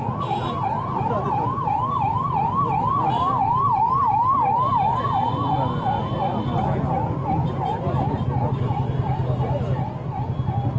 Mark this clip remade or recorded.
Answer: recorded